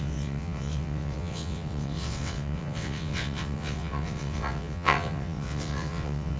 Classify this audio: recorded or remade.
remade